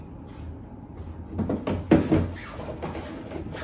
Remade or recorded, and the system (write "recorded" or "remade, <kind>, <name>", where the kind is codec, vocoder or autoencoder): recorded